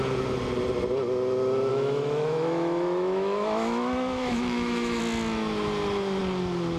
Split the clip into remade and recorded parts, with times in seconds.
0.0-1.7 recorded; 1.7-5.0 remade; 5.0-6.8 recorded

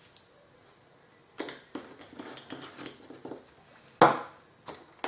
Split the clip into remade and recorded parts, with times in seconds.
0.0-5.1 recorded

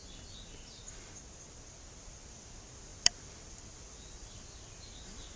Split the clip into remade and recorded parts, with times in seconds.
0.0-0.8 remade; 0.8-2.9 recorded; 2.9-4.4 remade; 4.4-5.4 recorded

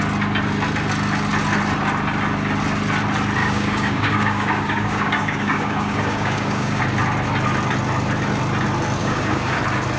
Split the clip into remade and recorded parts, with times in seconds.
0.0-3.4 recorded; 3.4-6.8 remade; 6.8-9.0 recorded; 9.0-9.6 remade; 9.6-10.0 recorded